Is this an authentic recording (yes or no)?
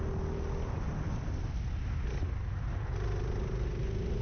yes